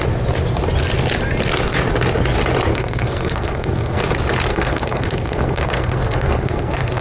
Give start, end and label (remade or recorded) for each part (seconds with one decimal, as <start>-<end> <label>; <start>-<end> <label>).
0.0-2.7 recorded; 2.7-4.0 remade; 4.0-4.5 recorded; 4.5-7.0 remade